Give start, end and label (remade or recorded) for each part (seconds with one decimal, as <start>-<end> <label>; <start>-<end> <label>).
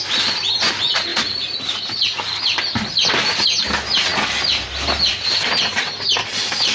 0.0-6.7 recorded